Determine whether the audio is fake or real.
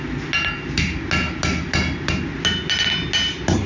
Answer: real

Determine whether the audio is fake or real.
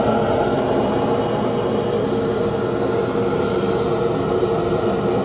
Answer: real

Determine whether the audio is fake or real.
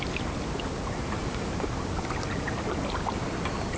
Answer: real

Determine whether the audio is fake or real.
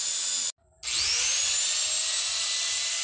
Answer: real